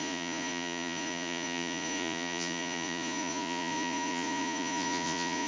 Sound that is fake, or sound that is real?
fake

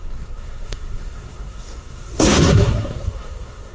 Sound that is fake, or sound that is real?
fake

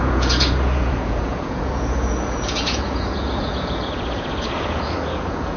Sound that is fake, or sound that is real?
fake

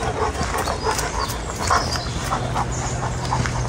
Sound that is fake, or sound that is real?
real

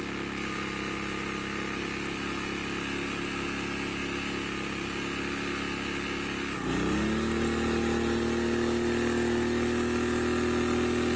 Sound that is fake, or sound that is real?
real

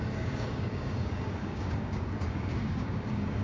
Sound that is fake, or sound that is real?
fake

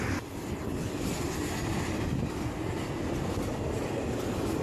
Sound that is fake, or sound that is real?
real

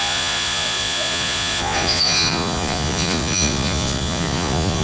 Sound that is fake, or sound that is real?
fake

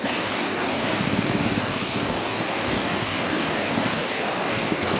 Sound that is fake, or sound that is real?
fake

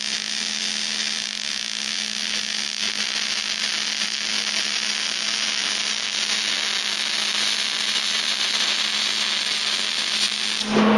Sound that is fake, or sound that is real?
real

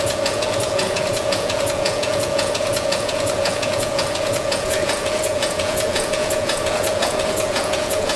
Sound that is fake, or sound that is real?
fake